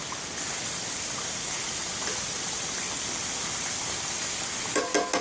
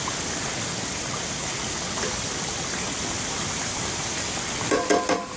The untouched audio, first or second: first